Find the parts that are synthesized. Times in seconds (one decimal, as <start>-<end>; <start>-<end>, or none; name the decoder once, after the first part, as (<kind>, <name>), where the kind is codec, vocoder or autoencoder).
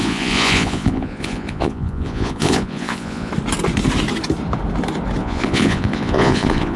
0.0-3.3 (vocoder, Vocos); 5.2-6.8